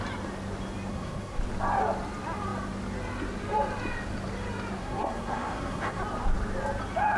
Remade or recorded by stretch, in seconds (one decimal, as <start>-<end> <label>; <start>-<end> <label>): 0.0-0.9 recorded; 0.9-1.4 remade; 1.4-4.8 recorded; 4.8-6.0 remade; 6.0-7.2 recorded